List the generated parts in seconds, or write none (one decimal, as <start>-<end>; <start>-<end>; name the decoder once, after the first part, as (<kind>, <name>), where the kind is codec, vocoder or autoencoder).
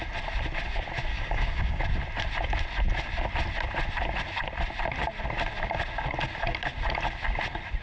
1.1-1.8 (codec, DAC)